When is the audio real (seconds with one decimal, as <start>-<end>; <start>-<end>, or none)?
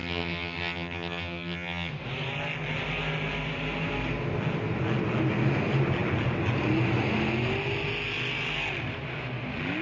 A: 1.9-9.8